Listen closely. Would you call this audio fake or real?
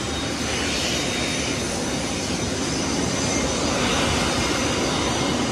real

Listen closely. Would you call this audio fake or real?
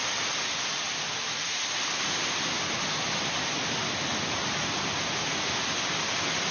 real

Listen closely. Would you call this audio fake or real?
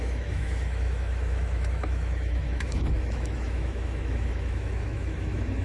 fake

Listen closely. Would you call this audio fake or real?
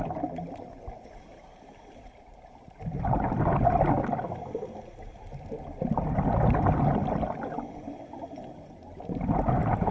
real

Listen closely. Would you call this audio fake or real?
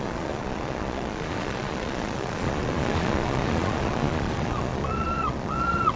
fake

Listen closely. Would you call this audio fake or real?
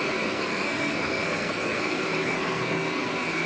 fake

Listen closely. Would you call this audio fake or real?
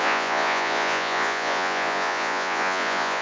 fake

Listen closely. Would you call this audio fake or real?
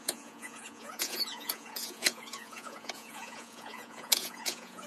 fake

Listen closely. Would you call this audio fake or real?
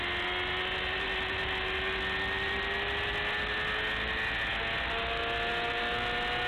real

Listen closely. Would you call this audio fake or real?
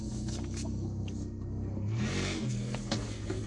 fake